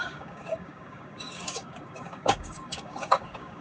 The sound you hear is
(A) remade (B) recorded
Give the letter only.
A